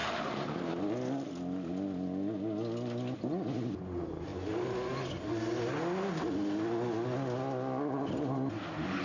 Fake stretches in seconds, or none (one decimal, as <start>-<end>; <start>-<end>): none